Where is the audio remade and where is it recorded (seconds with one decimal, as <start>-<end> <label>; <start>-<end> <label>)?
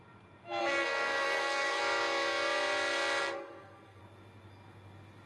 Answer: 0.0-0.6 recorded; 0.6-1.8 remade; 1.8-3.2 recorded; 3.2-4.0 remade; 4.0-5.3 recorded